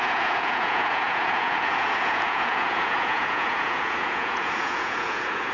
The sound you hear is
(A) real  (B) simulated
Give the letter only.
B